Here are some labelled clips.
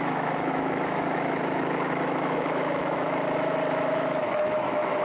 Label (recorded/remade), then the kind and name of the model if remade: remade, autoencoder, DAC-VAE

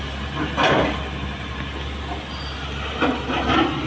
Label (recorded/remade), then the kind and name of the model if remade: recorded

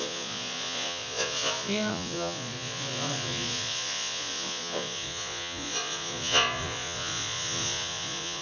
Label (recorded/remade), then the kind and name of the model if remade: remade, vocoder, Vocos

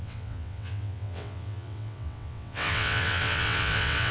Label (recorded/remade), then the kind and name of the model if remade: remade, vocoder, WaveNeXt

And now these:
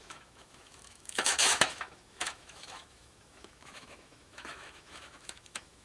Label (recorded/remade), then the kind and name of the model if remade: remade, autoencoder, DAC-VAE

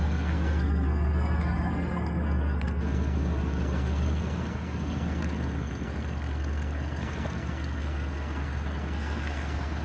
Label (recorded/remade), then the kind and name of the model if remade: remade, codec, SNAC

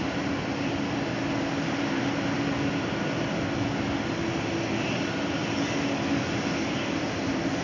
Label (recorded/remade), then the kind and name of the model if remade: recorded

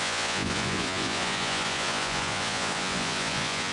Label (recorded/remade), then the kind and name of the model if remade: remade, vocoder, Vocos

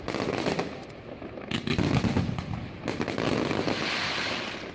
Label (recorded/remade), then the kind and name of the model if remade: recorded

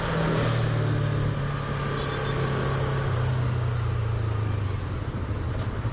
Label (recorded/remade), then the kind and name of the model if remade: recorded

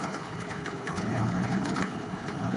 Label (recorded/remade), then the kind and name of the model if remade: remade, codec, HILCodec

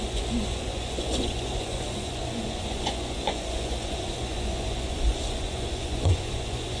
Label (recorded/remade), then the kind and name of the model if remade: remade, vocoder, Vocos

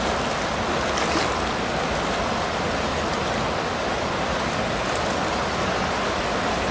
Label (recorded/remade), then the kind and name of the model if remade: recorded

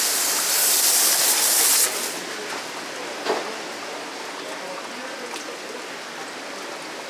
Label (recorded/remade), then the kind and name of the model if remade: recorded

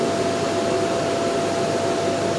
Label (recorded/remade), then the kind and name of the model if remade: recorded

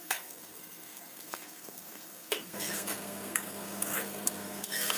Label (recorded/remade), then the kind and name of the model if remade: remade, codec, SNAC